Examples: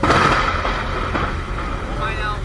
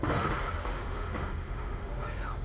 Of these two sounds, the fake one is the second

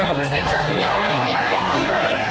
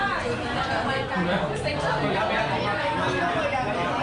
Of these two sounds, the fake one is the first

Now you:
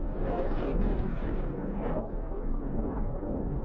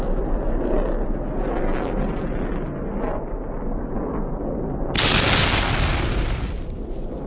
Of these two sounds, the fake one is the first